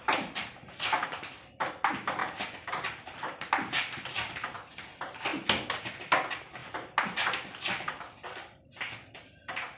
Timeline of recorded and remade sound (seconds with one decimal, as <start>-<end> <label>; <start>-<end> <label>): 0.0-9.8 recorded